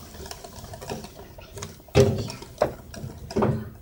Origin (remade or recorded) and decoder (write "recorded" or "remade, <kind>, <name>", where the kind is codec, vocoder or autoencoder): recorded